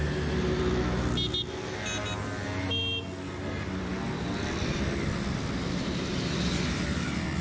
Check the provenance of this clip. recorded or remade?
recorded